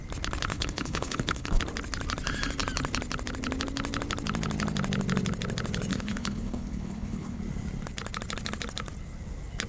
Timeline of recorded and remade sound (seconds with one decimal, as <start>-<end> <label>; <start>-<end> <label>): 0.0-0.5 recorded; 0.5-1.6 remade; 1.6-5.9 recorded; 5.9-7.4 remade; 7.4-9.7 recorded